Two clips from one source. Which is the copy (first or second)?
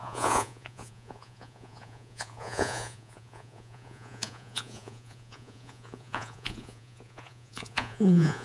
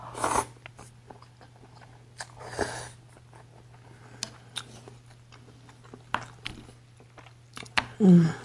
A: first